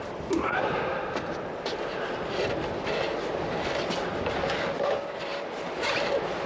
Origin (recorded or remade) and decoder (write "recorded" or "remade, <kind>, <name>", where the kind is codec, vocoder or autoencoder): recorded